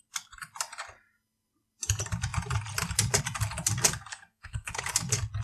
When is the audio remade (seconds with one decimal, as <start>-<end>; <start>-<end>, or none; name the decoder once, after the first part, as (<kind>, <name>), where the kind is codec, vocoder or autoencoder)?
4.1-4.8 (codec, SNAC)